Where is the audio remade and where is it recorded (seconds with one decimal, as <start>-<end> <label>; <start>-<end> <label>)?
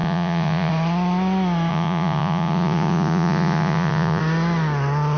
0.0-0.7 remade; 0.7-1.7 recorded; 1.7-4.2 remade; 4.2-5.2 recorded